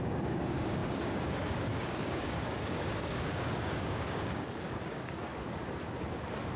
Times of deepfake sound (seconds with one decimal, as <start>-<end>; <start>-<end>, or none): 0.0-5.3